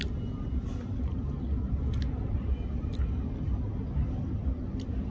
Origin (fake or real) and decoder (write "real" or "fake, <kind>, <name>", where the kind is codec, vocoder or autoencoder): real